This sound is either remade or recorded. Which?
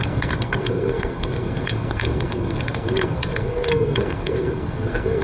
remade